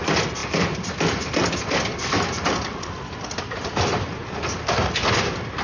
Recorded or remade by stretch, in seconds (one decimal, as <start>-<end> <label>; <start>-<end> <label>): 0.0-5.6 recorded